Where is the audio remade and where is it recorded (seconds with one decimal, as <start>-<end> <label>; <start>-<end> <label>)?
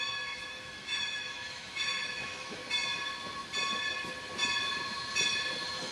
0.0-2.6 remade; 2.6-5.5 recorded; 5.5-5.9 remade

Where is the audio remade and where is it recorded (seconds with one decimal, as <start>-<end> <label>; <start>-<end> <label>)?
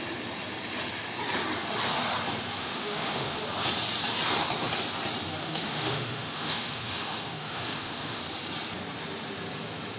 0.0-2.6 recorded; 2.6-3.4 remade; 3.4-5.4 recorded; 5.4-8.2 remade; 8.2-10.0 recorded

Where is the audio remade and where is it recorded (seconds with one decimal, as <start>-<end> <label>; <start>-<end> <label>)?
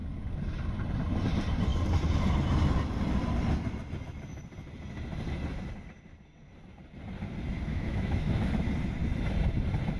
0.0-7.7 recorded; 7.7-8.5 remade; 8.5-10.0 recorded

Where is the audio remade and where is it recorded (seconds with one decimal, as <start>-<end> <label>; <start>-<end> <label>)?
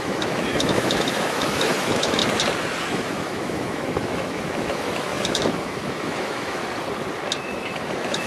0.0-2.2 remade; 2.2-2.9 recorded; 2.9-6.6 remade; 6.6-7.4 recorded; 7.4-8.3 remade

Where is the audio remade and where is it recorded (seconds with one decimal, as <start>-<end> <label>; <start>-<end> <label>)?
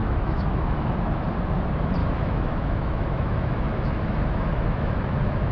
0.0-0.9 remade; 0.9-2.0 recorded; 2.0-5.5 remade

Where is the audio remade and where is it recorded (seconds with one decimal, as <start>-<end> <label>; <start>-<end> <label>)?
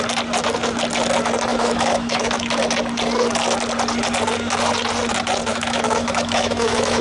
0.0-1.5 recorded; 1.5-2.6 remade; 2.6-5.5 recorded; 5.5-7.0 remade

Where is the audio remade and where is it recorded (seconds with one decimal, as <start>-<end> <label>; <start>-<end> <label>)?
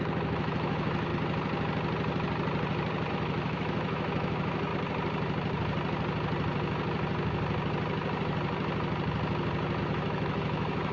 0.0-1.1 remade; 1.1-3.1 recorded; 3.1-4.7 remade; 4.7-9.8 recorded; 9.8-10.9 remade